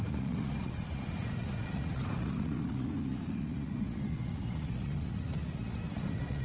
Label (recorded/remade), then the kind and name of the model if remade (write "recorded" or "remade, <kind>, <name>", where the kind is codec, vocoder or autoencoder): remade, vocoder, Vocos